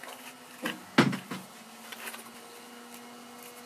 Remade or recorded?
recorded